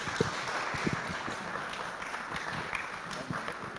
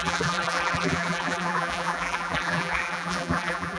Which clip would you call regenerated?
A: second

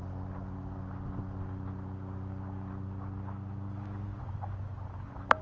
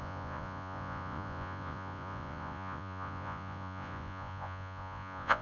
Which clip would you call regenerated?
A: second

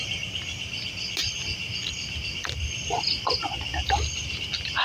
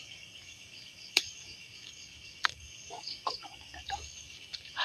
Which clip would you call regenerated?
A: second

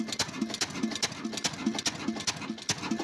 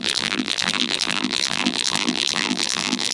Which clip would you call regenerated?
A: second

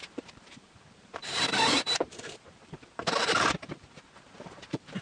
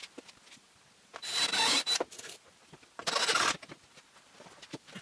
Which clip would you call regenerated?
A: first